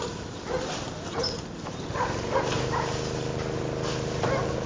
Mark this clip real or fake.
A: real